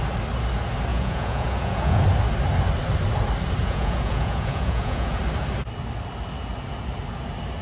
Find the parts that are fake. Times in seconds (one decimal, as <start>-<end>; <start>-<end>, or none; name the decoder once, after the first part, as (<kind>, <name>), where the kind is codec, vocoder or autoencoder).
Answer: 0.9-2.0 (vocoder, Vocos); 3.6-5.2